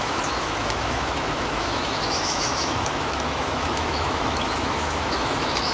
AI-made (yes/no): yes